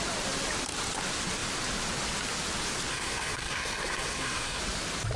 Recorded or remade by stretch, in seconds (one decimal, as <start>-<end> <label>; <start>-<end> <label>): 0.0-2.9 recorded; 2.9-4.6 remade; 4.6-5.2 recorded